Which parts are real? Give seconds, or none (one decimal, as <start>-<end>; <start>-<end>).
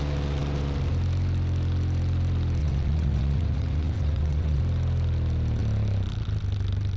0.0-2.6; 4.6-7.0